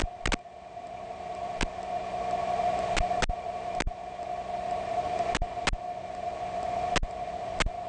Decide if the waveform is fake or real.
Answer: real